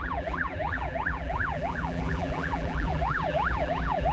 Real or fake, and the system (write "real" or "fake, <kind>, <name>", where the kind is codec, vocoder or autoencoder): fake, vocoder, BigVGAN v2